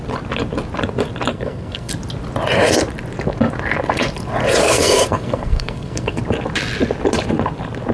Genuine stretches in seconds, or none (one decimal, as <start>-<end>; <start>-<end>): 0.0-1.3; 1.9-4.6; 6.2-7.9

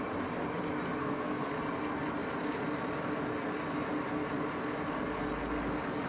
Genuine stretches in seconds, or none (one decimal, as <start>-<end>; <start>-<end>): 0.0-1.0; 1.5-6.1

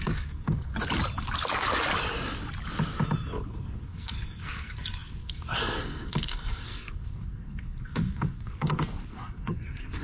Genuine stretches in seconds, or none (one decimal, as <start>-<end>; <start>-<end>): 0.7-3.5

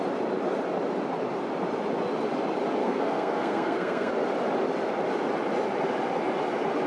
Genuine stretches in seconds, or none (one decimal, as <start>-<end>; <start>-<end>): 0.0-2.8; 4.1-6.9

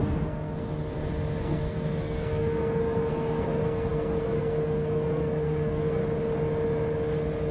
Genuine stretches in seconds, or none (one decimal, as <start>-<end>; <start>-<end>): 0.7-1.4; 6.0-7.5

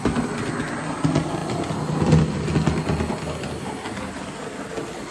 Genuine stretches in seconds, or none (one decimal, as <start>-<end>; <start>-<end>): 0.0-5.1